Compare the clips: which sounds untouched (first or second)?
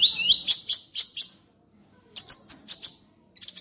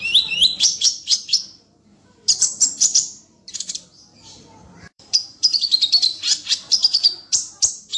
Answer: first